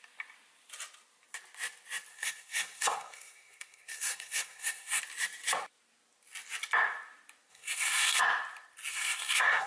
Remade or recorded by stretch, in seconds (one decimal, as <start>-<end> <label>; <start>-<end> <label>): 0.0-2.1 recorded; 2.1-5.0 remade; 5.0-7.5 recorded; 7.5-8.2 remade; 8.2-8.9 recorded; 8.9-9.7 remade